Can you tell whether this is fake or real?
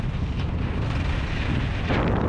real